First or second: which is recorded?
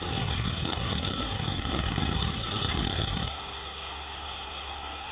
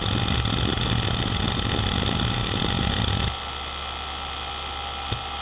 second